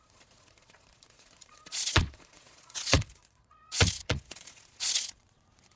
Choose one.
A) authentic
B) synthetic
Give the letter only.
B